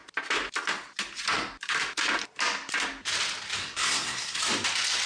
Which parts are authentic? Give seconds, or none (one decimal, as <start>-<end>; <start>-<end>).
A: 0.0-3.6; 4.4-5.1